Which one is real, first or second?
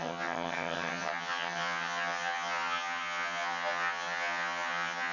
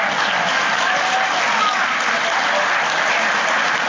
second